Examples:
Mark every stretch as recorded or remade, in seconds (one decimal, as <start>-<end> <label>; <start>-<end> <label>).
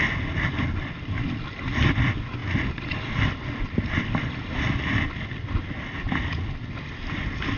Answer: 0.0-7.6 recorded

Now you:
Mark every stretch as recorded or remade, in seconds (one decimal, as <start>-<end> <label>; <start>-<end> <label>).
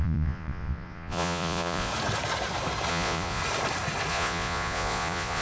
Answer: 0.0-1.9 remade; 1.9-2.9 recorded; 2.9-3.4 remade; 3.4-4.1 recorded; 4.1-5.4 remade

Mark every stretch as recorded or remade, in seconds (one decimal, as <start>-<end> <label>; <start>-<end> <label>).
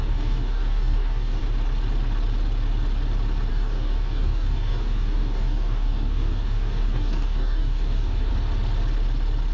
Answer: 0.0-1.4 remade; 1.4-3.5 recorded; 3.5-8.3 remade; 8.3-9.5 recorded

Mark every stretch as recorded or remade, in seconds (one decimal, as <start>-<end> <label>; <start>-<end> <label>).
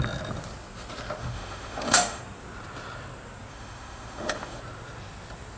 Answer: 0.0-1.2 recorded; 1.2-2.2 remade; 2.2-3.5 recorded; 3.5-4.6 remade; 4.6-5.6 recorded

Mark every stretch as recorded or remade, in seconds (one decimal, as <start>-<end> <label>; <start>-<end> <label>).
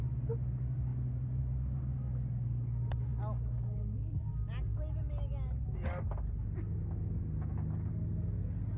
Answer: 0.0-8.8 recorded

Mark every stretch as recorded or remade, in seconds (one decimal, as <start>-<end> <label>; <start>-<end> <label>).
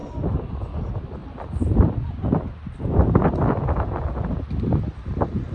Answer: 0.0-1.2 recorded; 1.2-4.5 remade; 4.5-5.5 recorded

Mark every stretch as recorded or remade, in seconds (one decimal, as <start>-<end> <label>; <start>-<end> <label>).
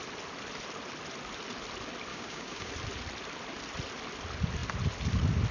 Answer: 0.0-2.1 recorded; 2.1-2.7 remade; 2.7-5.5 recorded